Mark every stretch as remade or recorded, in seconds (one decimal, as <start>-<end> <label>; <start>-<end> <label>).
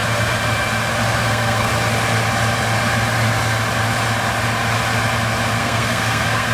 0.0-1.2 recorded; 1.2-1.7 remade; 1.7-5.6 recorded; 5.6-6.5 remade